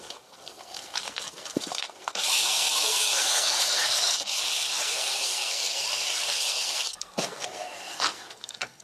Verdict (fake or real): fake